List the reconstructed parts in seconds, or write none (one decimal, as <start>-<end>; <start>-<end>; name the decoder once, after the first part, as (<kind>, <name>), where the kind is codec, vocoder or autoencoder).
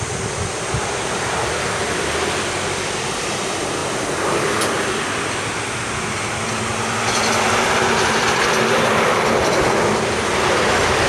none